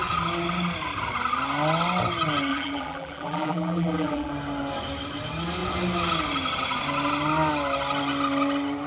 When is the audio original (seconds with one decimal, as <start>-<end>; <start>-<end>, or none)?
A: 0.0-2.5; 4.3-8.9